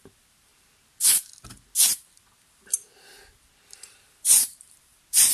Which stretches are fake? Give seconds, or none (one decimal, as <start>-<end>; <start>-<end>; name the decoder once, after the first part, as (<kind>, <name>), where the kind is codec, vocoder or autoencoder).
0.0-0.5 (vocoder, BigVGAN v2); 3.7-5.3